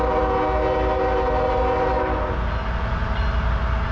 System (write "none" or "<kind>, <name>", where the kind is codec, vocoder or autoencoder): none